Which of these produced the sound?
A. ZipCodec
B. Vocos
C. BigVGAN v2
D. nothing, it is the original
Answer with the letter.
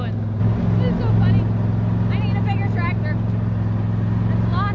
D